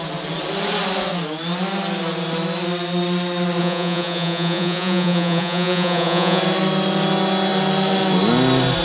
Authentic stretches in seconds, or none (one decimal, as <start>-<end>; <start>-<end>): 0.0-3.6; 6.4-8.8